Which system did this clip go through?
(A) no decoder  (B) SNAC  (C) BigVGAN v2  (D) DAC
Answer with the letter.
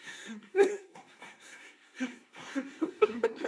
B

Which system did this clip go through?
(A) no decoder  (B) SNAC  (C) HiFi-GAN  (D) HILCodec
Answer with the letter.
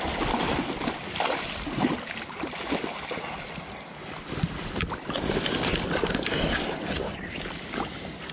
A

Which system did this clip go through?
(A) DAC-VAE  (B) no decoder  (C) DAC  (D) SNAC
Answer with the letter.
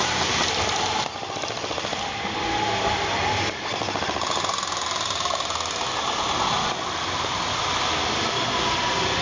B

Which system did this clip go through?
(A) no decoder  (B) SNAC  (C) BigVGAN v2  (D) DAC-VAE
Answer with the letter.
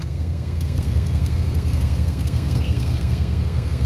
B